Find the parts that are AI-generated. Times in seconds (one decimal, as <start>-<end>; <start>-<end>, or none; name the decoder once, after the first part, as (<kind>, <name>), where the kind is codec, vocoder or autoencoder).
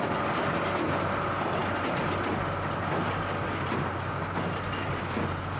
none